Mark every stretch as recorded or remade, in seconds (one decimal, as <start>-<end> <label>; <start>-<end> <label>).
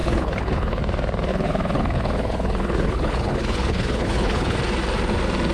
0.0-0.8 remade; 0.8-1.3 recorded; 1.3-4.6 remade; 4.6-5.5 recorded